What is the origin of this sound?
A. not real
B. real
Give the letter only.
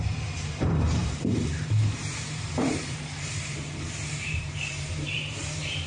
A